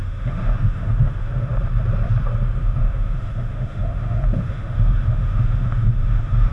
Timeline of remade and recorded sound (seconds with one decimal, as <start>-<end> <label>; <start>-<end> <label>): 0.0-1.5 remade; 1.5-2.6 recorded; 2.6-6.5 remade